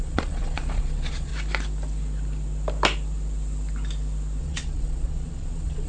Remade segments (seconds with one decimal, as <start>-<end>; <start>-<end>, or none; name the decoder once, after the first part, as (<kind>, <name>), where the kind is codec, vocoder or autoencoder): 0.0-1.3 (vocoder, Vocos); 4.4-5.9